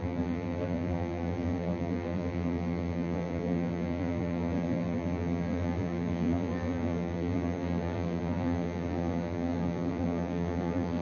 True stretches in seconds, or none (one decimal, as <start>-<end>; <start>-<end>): none